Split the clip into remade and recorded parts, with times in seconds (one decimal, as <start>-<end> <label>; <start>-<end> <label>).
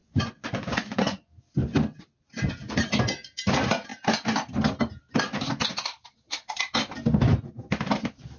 0.0-1.3 remade; 1.3-8.4 recorded